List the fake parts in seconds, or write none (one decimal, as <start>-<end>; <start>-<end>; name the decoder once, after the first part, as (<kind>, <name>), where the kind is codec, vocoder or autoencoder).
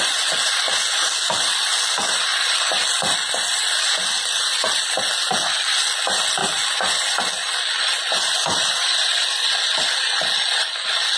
none